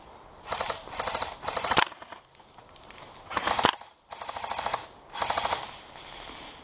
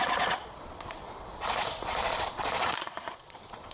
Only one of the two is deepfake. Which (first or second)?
second